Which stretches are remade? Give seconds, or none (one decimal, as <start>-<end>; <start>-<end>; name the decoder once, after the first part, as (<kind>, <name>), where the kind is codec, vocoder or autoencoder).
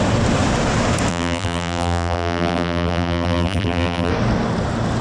1.1-4.1 (vocoder, BigVGAN v2)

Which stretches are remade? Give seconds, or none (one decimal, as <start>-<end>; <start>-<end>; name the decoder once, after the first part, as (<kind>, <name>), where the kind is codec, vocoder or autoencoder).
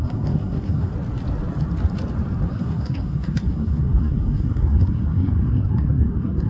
0.0-0.9 (codec, SNAC); 2.5-6.5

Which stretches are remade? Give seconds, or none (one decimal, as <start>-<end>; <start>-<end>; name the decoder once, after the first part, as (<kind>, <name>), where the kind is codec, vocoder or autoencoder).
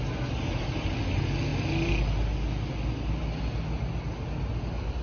none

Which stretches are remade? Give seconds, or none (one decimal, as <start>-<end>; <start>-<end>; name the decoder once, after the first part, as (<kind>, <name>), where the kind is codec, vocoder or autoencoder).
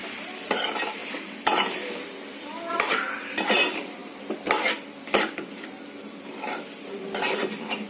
0.0-1.0 (vocoder, BigVGAN v2); 1.7-4.0; 4.7-7.9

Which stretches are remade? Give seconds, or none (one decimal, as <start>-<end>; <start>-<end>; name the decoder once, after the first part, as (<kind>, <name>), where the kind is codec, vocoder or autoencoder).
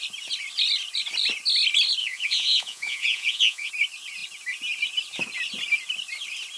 2.0-3.7 (vocoder, Vocos)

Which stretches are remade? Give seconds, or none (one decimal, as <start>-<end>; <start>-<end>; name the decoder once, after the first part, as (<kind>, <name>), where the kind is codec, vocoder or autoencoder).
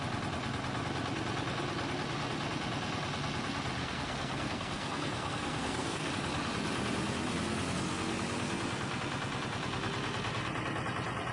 3.8-6.1 (codec, SNAC)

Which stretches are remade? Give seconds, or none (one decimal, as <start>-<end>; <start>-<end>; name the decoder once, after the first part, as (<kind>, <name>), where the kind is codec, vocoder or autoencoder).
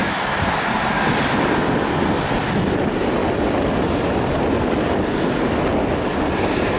none